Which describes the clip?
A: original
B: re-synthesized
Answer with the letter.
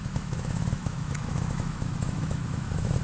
B